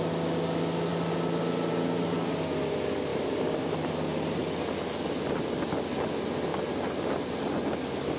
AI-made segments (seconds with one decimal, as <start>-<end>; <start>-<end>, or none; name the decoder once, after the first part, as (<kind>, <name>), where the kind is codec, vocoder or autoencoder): 3.1-3.9 (vocoder, BigVGAN v2); 6.5-7.5